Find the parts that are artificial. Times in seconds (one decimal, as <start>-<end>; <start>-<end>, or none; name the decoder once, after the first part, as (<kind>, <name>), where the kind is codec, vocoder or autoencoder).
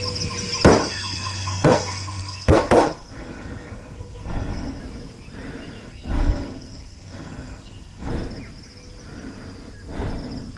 0.8-4.8 (codec, SNAC); 5.8-8.1